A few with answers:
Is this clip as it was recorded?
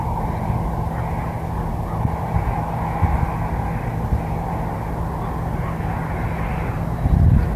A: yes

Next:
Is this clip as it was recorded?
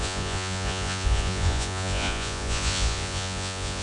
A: no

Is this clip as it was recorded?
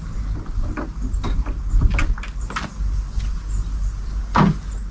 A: yes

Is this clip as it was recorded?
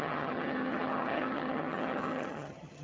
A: no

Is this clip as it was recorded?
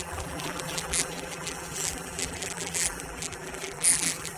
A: no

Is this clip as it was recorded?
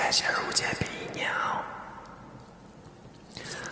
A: yes